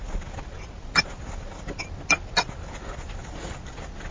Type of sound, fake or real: real